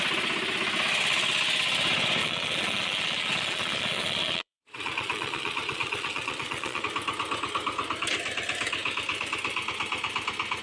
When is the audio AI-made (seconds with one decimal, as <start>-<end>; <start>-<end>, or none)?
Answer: 2.2-6.8